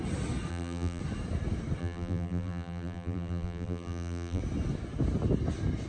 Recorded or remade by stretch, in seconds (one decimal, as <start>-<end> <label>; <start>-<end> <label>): 0.0-0.5 recorded; 0.5-1.0 remade; 1.0-1.8 recorded; 1.8-4.4 remade; 4.4-5.9 recorded